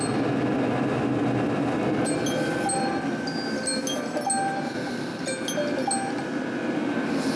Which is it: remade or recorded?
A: recorded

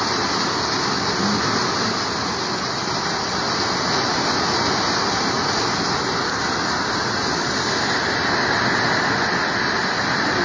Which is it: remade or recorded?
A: recorded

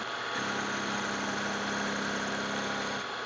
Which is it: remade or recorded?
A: recorded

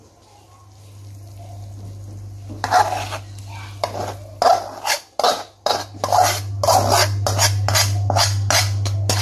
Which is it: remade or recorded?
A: recorded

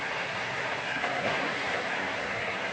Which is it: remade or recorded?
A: remade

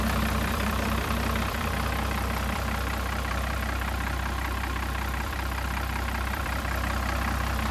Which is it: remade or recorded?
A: remade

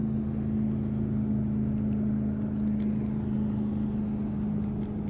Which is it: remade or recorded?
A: recorded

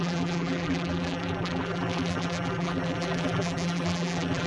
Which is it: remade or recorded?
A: remade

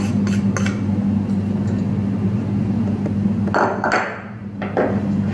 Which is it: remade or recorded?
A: recorded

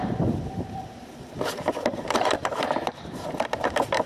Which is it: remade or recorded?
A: remade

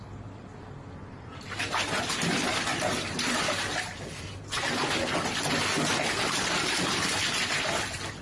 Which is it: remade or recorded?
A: recorded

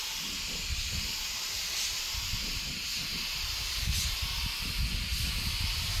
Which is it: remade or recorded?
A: recorded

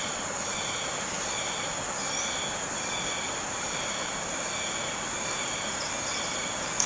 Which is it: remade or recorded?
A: recorded